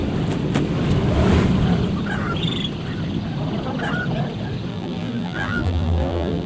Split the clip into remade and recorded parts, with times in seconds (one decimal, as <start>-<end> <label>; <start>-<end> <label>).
0.0-4.7 recorded; 4.7-6.5 remade